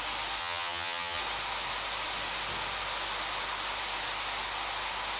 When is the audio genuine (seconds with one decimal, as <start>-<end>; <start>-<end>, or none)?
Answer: 0.0-0.4; 1.2-5.2